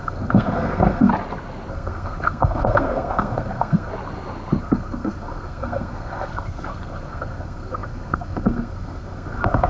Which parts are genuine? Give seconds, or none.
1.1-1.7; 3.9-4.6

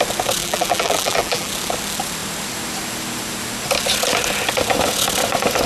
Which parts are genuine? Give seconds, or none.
0.0-0.4; 1.5-5.7